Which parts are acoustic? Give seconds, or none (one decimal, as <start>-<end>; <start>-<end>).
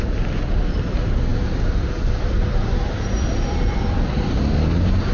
0.0-5.1